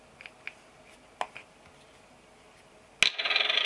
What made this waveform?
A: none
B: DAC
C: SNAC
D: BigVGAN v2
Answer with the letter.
A